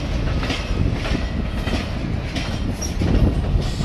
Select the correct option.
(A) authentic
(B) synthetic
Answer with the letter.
A